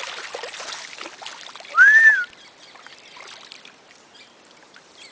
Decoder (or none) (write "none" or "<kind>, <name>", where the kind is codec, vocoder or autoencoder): none